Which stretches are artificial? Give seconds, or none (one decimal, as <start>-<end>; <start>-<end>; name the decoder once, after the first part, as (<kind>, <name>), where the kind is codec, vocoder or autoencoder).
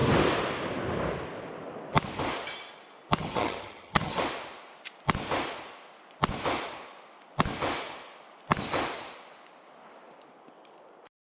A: 3.2-4.2 (vocoder, HiFi-GAN)